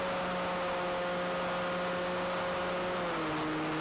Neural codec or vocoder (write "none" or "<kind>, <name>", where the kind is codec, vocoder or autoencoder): none